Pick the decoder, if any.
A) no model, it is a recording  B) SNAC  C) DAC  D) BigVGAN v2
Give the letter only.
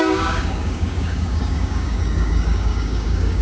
C